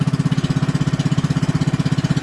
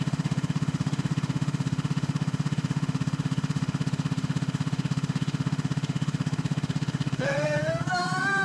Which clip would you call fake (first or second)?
second